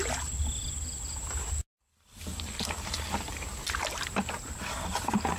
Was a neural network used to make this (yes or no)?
no